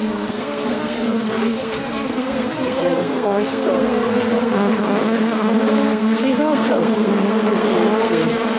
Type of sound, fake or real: fake